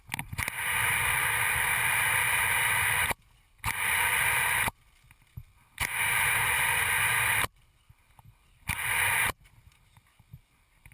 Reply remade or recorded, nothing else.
recorded